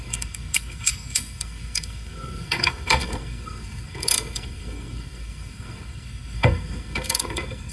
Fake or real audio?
fake